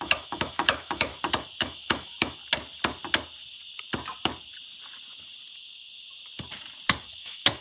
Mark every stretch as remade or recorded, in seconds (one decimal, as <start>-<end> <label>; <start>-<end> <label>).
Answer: 0.0-1.1 remade; 1.1-1.6 recorded; 1.6-2.4 remade; 2.4-7.0 recorded; 7.0-7.6 remade

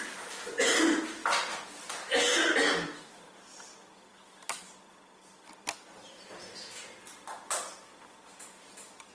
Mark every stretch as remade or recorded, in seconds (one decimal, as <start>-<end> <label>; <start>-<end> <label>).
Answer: 0.0-9.1 recorded